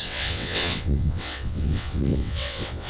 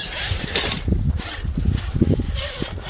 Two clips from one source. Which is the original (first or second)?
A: second